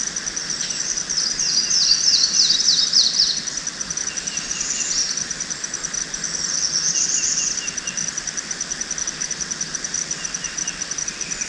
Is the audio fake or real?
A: real